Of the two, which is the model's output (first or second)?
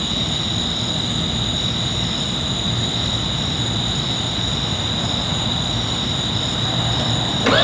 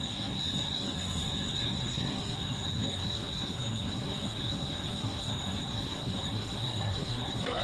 second